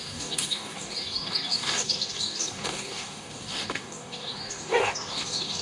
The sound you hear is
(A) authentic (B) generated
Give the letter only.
B